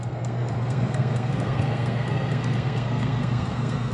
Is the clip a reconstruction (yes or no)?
yes